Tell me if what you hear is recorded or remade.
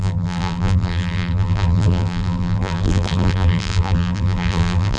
remade